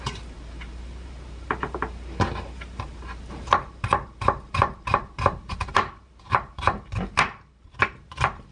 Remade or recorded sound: remade